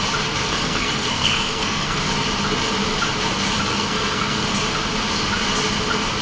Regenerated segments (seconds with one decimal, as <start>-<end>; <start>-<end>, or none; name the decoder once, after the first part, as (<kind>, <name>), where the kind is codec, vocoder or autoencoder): 0.4-2.0 (codec, SNAC); 3.7-4.5